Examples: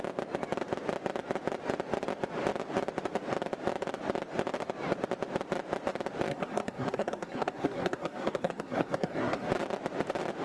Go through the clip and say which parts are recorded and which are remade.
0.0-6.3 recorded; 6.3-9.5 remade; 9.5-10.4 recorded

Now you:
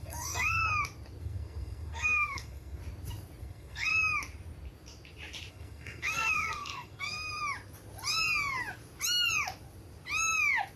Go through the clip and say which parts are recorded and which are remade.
0.0-0.6 remade; 0.6-1.2 recorded; 1.2-2.8 remade; 2.8-3.4 recorded; 3.4-3.9 remade; 3.9-5.5 recorded; 5.5-7.3 remade; 7.3-10.8 recorded

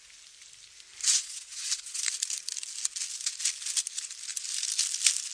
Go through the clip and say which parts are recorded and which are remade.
0.0-1.0 recorded; 1.0-2.0 remade; 2.0-5.3 recorded